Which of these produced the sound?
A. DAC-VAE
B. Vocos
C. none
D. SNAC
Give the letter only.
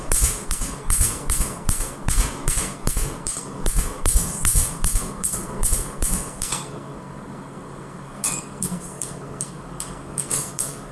D